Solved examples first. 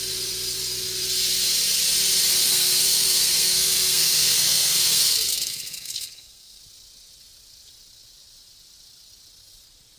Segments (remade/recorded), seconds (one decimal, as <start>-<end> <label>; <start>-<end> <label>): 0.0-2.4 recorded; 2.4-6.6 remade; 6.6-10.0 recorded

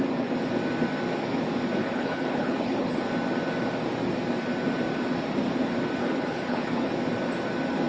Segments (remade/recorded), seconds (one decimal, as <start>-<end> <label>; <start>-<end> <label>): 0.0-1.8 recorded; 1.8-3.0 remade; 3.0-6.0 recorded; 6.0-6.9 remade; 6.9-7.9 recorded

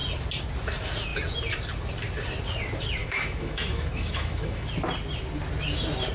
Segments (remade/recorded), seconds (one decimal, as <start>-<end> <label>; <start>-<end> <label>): 0.0-3.0 recorded; 3.0-4.7 remade; 4.7-6.1 recorded